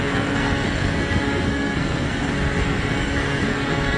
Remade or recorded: remade